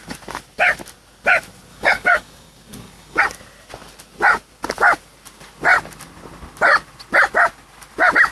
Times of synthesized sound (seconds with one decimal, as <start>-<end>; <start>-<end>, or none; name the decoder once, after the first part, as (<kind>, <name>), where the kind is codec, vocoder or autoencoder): 1.7-3.2 (codec, DAC)